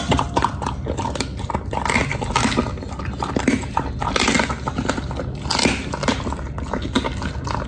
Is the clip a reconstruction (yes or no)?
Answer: no